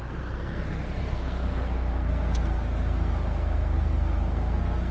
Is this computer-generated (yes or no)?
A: yes